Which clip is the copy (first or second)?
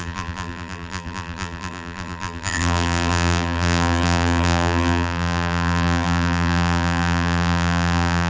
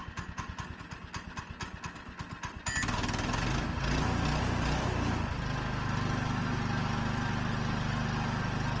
first